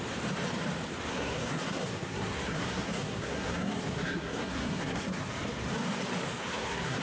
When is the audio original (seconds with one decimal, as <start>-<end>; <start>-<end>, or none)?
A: 0.0-1.1; 5.3-6.4